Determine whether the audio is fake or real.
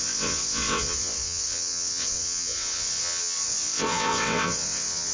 fake